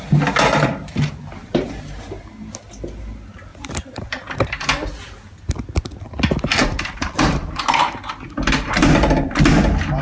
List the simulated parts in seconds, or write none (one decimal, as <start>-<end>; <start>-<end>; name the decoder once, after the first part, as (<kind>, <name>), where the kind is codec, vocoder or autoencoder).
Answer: 1.4-2.2 (vocoder, BigVGAN v2); 3.5-4.9; 6.6-7.6